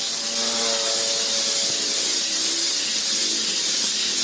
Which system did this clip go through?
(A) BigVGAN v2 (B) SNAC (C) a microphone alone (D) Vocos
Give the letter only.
C